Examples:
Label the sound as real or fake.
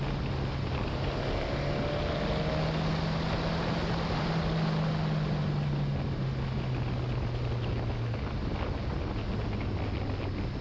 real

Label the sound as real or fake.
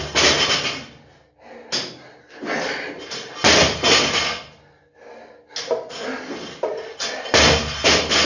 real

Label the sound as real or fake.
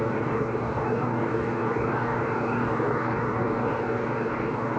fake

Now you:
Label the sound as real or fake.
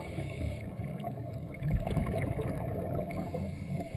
fake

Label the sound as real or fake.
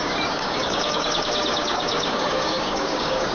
fake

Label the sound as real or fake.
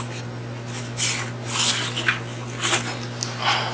real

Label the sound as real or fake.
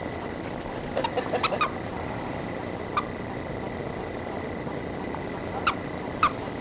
real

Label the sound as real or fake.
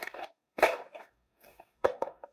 fake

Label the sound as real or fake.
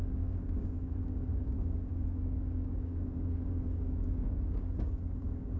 fake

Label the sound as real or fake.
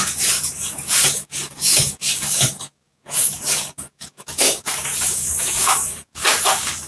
fake